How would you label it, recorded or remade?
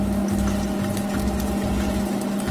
recorded